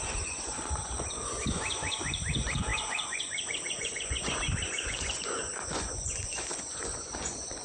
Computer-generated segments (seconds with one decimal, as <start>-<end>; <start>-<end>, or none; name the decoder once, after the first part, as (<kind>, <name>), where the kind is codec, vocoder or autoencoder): 0.0-7.6 (vocoder, Vocos)